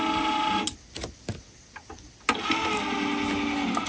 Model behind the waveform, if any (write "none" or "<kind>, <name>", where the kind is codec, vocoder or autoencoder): none